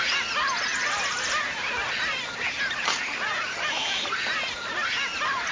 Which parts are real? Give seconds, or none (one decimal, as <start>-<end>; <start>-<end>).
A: 0.0-5.5